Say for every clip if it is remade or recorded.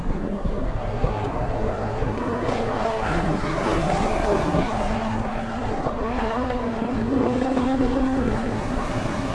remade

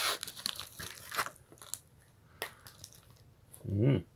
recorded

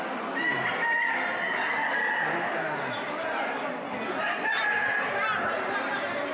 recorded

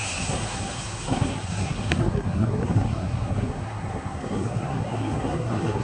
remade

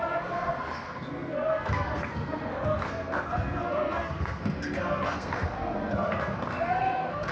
remade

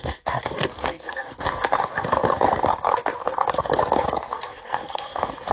remade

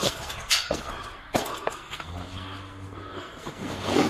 remade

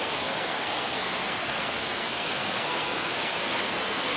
remade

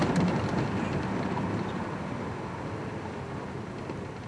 recorded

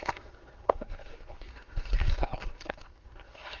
remade